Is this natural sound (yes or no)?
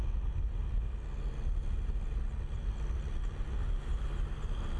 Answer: yes